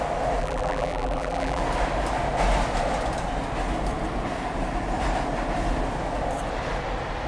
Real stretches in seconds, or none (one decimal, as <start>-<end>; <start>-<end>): 0.0-0.4; 1.6-7.3